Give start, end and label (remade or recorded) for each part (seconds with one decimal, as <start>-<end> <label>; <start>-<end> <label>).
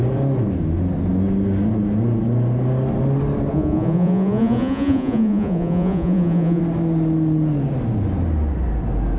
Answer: 0.0-3.5 recorded; 3.5-6.6 remade; 6.6-9.2 recorded